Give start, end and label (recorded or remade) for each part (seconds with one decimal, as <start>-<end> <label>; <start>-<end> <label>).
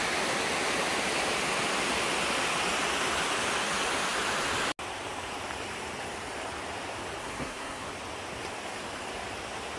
0.0-7.2 recorded; 7.2-7.9 remade; 7.9-9.8 recorded